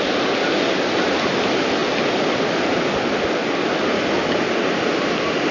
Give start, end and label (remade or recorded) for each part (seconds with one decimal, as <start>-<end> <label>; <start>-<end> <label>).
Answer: 0.0-5.5 recorded